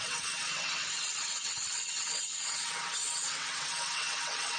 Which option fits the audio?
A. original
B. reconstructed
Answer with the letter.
B